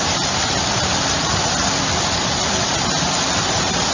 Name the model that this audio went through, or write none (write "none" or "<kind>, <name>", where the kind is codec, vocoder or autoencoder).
vocoder, BigVGAN v2